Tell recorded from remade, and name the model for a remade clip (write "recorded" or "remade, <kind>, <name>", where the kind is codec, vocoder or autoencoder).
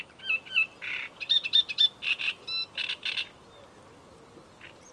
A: recorded